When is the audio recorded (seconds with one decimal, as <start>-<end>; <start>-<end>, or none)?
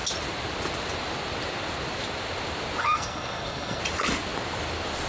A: 0.0-2.8; 3.8-5.1